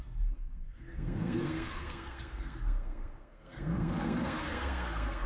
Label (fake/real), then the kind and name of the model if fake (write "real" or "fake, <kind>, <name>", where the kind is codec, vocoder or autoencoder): fake, codec, SNAC